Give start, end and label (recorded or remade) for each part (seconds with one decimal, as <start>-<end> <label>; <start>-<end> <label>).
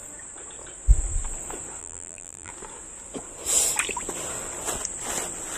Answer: 0.0-1.8 recorded; 1.8-2.5 remade; 2.5-5.6 recorded